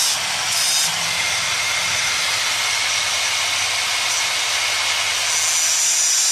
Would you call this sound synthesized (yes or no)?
no